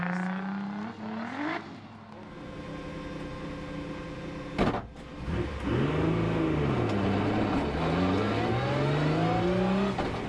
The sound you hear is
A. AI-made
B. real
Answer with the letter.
B